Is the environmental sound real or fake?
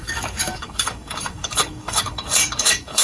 fake